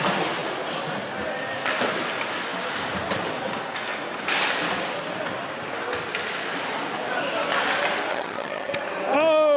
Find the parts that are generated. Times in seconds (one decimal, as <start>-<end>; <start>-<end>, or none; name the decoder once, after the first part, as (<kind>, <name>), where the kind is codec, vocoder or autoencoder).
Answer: 8.1-8.7 (vocoder, HiFi-GAN)